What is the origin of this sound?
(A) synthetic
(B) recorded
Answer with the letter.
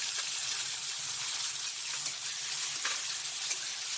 B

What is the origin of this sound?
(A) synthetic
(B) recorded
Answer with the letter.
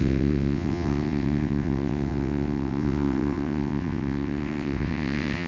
A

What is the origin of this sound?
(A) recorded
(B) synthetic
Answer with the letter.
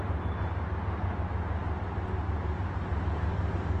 A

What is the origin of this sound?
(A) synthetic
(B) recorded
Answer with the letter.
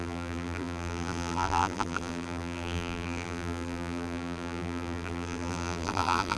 A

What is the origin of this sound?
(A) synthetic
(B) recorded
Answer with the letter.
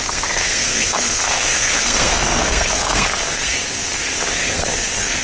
A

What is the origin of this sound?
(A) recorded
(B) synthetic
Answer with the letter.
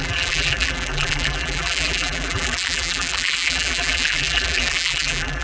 B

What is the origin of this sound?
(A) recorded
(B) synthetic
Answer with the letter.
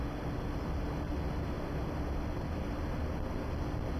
A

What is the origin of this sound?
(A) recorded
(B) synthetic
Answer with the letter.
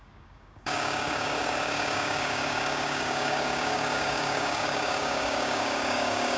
B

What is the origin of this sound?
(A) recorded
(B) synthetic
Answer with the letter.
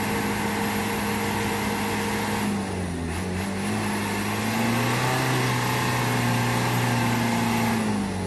A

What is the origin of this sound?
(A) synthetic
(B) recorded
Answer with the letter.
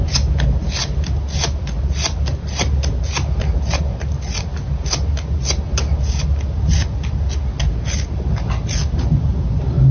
B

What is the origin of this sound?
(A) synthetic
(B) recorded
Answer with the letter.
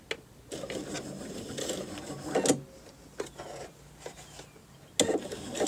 B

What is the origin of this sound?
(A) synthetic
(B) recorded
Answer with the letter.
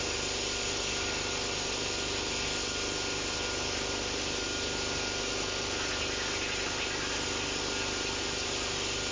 B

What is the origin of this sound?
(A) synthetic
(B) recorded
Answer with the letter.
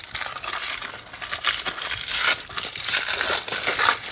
B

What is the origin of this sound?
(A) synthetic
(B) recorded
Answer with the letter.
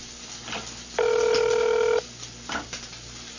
B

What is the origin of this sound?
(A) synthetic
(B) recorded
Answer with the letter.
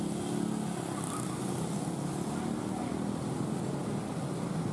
B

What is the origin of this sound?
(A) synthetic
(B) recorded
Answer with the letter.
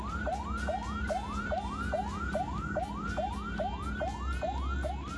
B